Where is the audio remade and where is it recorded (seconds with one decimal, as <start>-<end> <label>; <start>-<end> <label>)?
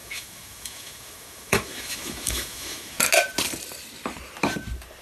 0.0-3.0 remade; 3.0-5.0 recorded